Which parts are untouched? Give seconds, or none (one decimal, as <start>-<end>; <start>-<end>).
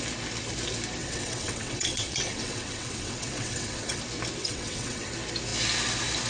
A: 0.0-1.0; 4.0-4.4; 5.1-6.3